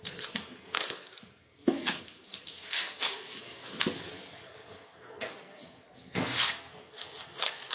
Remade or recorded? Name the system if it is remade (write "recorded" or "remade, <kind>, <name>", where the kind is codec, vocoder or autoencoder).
remade, codec, SNAC